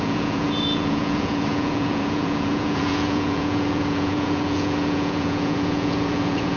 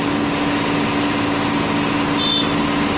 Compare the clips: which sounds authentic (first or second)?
second